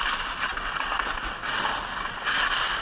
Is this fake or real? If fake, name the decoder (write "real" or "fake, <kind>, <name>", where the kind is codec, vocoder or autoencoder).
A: real